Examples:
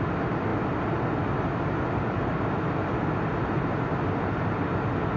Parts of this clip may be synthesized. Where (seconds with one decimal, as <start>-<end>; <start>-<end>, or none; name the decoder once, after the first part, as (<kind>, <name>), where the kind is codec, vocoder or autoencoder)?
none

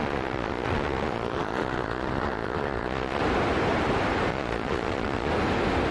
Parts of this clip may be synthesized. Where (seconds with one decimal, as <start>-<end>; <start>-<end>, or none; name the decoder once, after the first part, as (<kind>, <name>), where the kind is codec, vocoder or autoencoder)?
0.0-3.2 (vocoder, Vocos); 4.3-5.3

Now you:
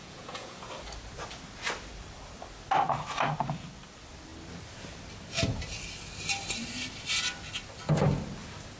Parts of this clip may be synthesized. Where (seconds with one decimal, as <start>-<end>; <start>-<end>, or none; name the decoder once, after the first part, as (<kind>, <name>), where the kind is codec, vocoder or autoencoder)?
0.0-0.7 (vocoder, Vocos)

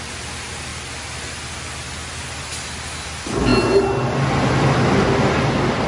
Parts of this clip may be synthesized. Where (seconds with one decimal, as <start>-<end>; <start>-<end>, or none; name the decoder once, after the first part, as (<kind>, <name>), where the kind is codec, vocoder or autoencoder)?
none

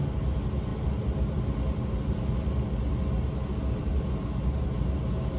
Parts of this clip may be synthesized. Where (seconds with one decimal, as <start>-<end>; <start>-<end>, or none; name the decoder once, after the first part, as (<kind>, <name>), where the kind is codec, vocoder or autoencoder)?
none

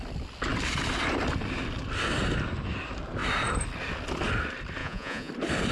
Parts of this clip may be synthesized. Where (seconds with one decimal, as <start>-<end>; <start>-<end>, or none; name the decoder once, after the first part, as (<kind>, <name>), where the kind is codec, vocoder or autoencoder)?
4.8-5.3 (vocoder, Vocos)